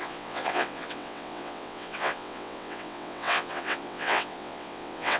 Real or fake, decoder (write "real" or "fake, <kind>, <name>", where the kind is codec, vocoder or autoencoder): fake, vocoder, WaveNeXt